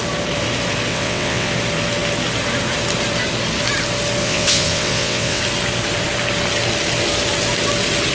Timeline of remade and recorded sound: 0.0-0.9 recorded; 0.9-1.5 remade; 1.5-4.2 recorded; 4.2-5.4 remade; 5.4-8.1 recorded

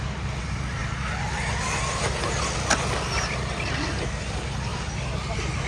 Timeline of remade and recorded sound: 0.0-5.7 recorded

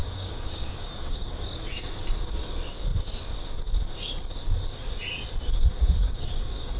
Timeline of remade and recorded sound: 0.0-1.3 remade; 1.3-5.7 recorded; 5.7-6.8 remade

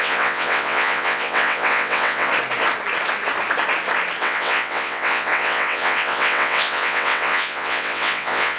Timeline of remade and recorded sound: 0.0-2.3 remade; 2.3-4.2 recorded; 4.2-8.6 remade

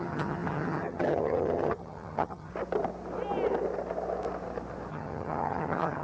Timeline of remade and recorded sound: 0.0-2.5 remade; 2.5-4.9 recorded; 4.9-6.0 remade

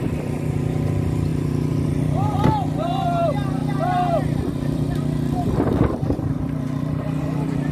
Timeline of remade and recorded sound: 0.0-7.7 remade

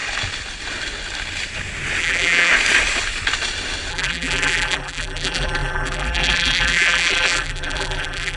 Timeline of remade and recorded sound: 0.0-2.0 recorded; 2.0-2.5 remade; 2.5-3.9 recorded; 3.9-8.4 remade